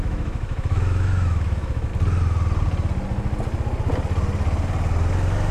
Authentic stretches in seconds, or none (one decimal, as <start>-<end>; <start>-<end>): 1.9-5.5